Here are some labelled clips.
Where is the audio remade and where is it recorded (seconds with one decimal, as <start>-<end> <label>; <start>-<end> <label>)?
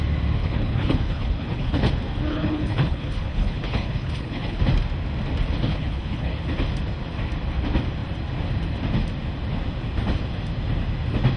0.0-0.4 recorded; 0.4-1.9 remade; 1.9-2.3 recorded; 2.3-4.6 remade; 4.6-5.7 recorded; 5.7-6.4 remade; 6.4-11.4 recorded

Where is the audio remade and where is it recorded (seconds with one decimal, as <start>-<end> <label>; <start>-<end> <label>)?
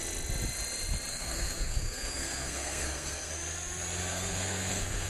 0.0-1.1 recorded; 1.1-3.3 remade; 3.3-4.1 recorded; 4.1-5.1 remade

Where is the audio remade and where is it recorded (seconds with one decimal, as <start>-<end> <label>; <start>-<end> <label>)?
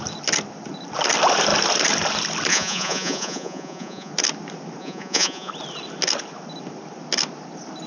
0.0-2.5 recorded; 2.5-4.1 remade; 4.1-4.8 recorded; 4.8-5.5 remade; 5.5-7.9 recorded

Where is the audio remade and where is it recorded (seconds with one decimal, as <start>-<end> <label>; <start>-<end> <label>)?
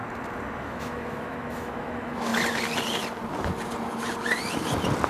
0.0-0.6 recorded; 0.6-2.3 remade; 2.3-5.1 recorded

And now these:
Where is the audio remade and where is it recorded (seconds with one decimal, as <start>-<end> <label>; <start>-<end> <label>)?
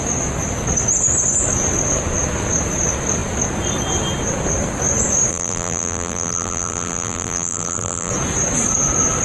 0.0-5.3 recorded; 5.3-8.1 remade; 8.1-9.2 recorded